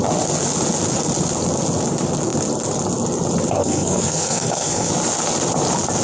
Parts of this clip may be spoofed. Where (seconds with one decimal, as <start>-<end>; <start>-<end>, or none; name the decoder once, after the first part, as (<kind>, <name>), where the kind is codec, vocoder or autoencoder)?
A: 3.6-4.9 (codec, SNAC)